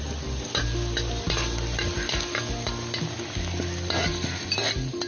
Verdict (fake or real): real